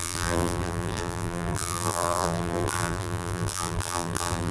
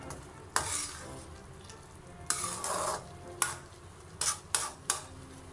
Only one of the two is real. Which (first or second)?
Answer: second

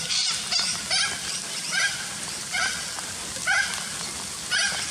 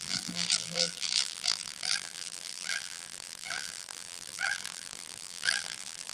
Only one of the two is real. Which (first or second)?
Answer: first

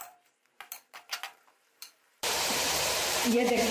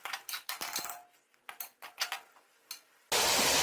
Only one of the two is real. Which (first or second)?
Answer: second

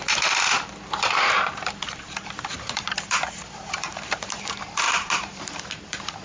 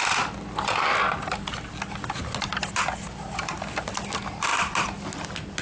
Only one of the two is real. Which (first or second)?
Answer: second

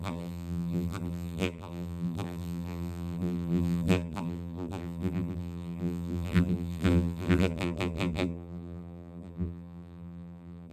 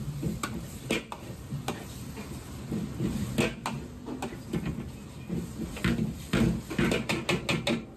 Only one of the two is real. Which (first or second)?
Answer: second